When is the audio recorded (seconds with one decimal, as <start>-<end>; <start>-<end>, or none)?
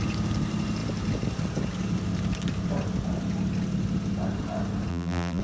0.0-4.9